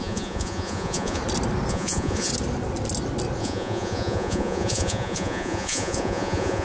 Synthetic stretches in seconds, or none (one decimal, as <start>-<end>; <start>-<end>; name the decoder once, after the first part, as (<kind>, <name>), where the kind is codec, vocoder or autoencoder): 0.0-1.2 (vocoder, Vocos); 1.7-2.3; 3.4-6.6